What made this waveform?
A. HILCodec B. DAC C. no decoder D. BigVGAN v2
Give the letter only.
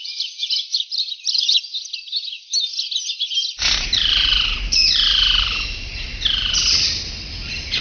C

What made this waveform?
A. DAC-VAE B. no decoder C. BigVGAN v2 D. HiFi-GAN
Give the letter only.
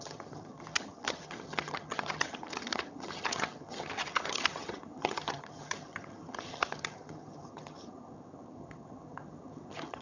D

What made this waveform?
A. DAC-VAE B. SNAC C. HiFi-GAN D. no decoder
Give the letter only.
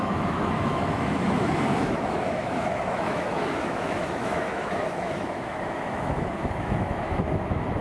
A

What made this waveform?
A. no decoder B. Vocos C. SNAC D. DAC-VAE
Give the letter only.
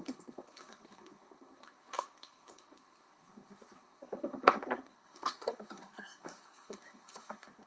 C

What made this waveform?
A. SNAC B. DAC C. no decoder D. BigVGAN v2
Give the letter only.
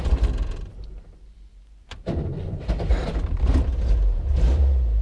D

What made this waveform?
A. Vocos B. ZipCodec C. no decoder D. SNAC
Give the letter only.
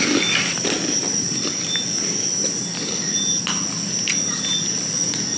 C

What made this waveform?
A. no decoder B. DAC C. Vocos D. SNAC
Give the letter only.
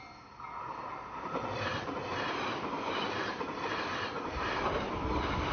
A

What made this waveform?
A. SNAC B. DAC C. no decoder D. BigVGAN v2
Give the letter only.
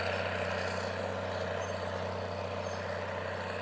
C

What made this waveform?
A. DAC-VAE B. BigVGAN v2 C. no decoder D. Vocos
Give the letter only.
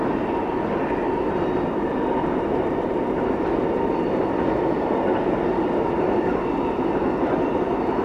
C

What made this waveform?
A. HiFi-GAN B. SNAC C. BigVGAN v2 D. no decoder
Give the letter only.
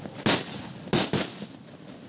D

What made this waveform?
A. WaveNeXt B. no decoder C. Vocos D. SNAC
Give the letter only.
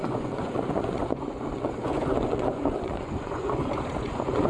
C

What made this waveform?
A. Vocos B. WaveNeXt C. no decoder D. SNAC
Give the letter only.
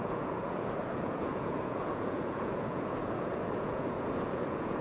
A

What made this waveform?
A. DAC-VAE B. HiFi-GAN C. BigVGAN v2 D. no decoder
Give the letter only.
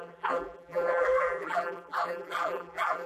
C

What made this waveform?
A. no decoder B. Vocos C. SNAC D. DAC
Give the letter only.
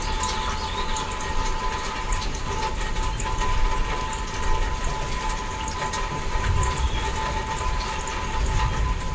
A